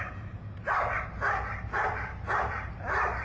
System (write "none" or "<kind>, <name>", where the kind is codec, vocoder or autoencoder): none